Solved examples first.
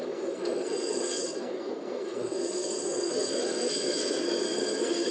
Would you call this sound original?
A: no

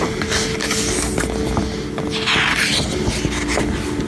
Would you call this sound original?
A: yes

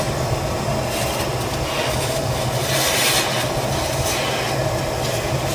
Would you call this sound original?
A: yes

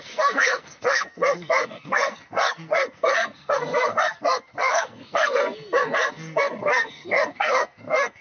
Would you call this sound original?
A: no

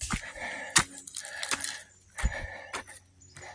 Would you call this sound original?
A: yes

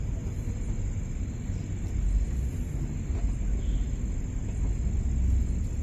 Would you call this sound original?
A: yes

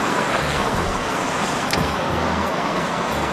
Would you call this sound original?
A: no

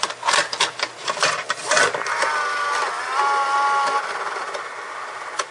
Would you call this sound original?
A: yes